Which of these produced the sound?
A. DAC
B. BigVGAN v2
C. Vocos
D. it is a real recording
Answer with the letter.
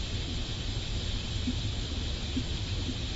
D